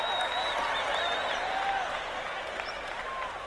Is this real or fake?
real